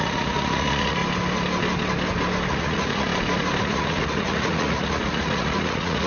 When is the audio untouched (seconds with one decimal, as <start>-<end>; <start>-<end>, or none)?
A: 1.0-2.5; 3.1-3.6